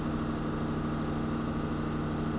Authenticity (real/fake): real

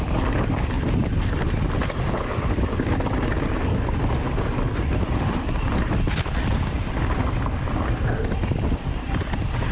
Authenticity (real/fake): real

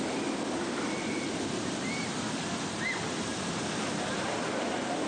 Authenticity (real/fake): real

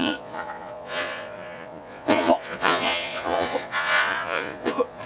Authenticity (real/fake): fake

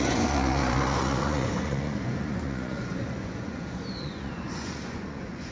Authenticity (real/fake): fake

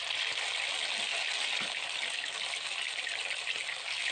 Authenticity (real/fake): real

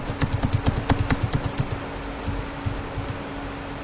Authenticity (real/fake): real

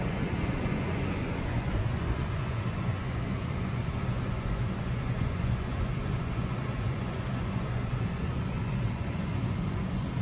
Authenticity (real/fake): fake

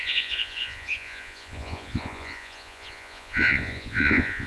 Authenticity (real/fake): fake